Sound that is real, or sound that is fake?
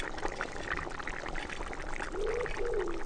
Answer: real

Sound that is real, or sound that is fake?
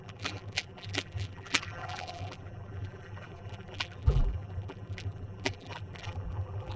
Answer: fake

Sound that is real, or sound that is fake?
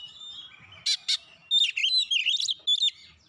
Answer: real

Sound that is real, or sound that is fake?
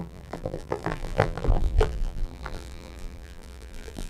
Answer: fake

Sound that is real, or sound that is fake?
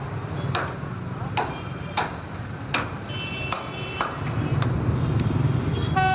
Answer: real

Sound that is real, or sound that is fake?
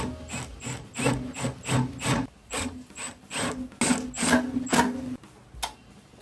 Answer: real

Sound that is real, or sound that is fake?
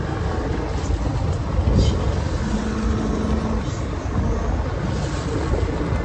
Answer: real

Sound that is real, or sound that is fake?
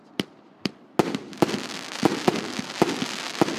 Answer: real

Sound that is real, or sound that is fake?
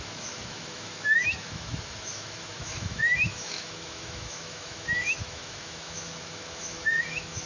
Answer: fake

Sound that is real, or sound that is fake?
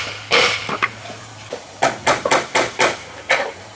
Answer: fake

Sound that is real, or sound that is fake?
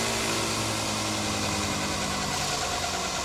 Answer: real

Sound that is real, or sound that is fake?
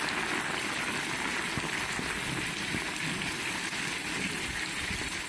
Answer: real